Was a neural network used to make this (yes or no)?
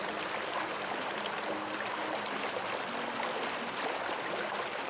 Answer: yes